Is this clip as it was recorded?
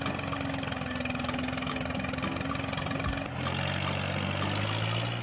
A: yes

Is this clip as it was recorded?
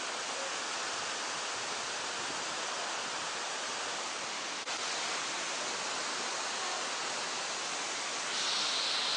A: yes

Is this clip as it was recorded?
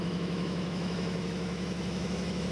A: no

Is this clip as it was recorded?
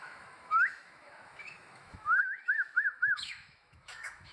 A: no